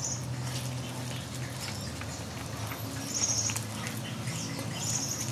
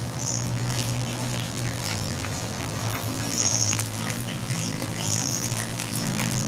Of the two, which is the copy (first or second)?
second